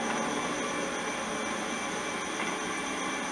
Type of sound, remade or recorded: recorded